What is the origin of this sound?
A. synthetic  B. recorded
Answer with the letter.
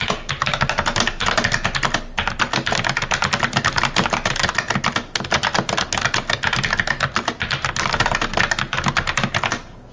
B